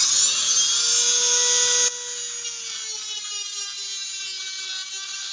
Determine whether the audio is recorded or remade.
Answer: recorded